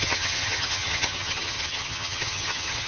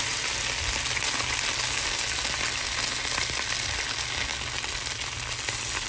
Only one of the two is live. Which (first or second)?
second